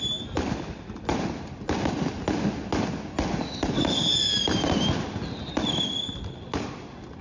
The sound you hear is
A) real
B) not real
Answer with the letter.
A